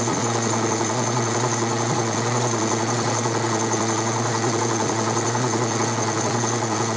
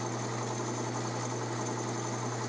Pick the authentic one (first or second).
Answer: second